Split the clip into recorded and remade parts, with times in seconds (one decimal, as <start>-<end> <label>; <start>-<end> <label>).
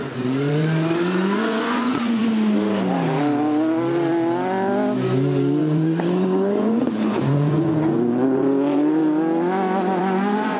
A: 0.0-2.2 remade; 2.2-5.6 recorded; 5.6-9.0 remade; 9.0-10.0 recorded; 10.0-10.6 remade